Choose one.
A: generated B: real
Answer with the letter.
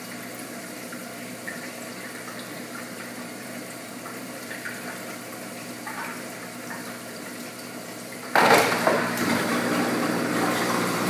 A